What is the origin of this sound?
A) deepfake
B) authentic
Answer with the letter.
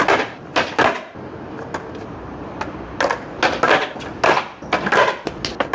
B